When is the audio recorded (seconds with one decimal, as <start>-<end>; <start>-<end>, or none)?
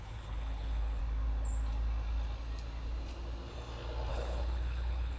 1.0-4.1